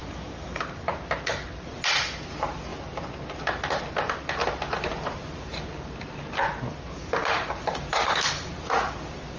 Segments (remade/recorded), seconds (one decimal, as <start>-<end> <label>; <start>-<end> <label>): 0.0-0.6 remade; 0.6-7.9 recorded; 7.9-8.5 remade; 8.5-9.4 recorded